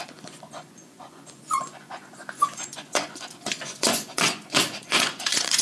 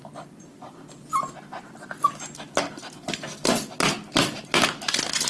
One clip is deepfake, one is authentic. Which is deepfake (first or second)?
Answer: first